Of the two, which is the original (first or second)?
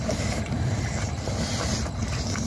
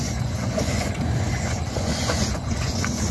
first